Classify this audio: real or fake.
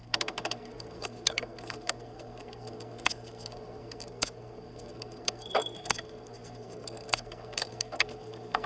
fake